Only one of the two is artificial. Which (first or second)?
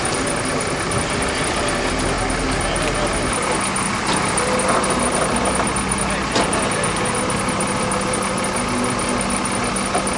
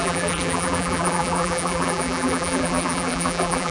second